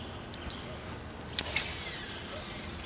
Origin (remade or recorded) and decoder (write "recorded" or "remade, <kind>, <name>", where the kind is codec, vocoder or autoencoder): recorded